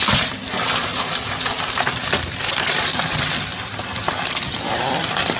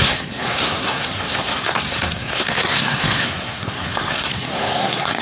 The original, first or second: first